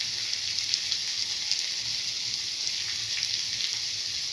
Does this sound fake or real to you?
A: real